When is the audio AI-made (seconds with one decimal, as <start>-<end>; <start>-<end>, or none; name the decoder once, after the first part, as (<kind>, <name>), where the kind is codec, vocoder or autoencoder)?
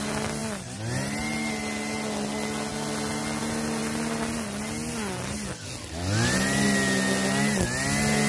none